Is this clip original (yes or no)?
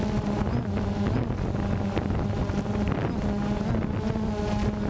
yes